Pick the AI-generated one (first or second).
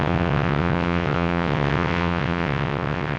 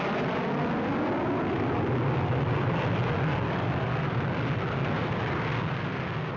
first